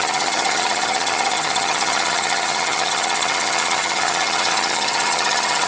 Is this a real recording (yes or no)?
no